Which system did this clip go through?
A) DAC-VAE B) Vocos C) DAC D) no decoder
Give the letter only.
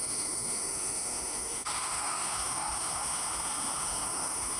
A